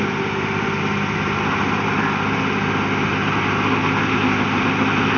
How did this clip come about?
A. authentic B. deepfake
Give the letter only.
A